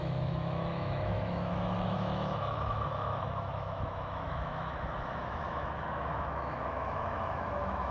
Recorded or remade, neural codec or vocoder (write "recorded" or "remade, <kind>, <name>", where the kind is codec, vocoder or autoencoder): remade, autoencoder, DAC-VAE